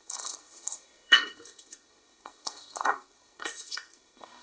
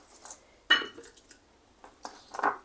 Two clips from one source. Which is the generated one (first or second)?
first